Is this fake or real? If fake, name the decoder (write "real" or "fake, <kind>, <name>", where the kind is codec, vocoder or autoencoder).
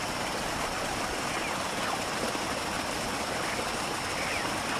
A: real